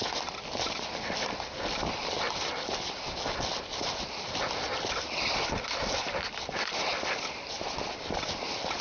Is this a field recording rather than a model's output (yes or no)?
yes